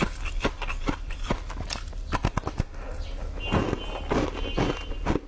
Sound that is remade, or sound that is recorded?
recorded